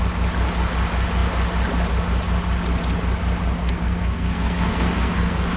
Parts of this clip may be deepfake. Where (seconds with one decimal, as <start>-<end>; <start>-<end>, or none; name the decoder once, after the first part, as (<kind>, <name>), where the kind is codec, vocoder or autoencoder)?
3.6-5.6 (codec, SNAC)